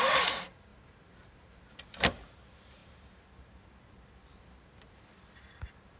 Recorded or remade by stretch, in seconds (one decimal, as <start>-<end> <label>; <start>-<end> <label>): 0.0-6.0 recorded